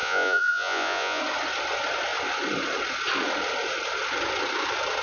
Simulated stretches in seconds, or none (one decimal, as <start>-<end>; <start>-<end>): 0.0-1.2